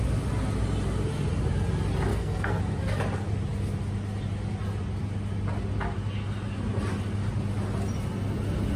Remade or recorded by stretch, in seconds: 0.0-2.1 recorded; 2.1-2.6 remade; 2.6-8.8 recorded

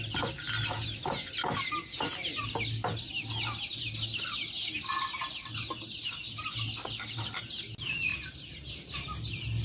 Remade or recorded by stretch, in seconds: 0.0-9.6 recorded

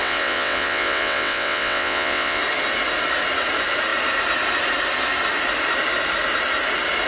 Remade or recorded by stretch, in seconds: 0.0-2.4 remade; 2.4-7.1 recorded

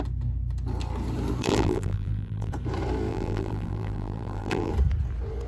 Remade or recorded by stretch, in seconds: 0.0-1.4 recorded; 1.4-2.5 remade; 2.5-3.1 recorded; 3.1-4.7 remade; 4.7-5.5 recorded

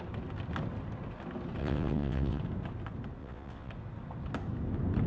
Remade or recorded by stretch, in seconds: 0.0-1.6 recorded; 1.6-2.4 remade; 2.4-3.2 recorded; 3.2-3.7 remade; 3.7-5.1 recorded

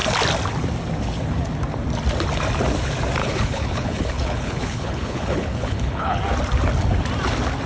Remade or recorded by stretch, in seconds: 0.0-3.2 recorded; 3.2-6.2 remade; 6.2-7.7 recorded

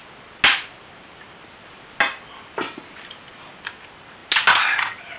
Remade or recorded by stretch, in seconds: 0.0-5.2 recorded